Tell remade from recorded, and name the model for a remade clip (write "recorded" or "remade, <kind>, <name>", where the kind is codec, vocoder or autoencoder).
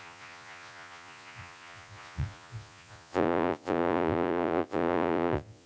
remade, vocoder, Vocos